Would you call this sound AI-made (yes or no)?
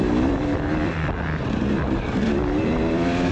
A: yes